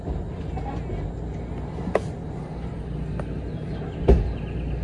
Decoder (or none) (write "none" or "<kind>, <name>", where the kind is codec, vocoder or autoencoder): none